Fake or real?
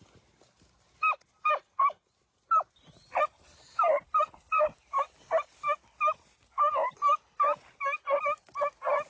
real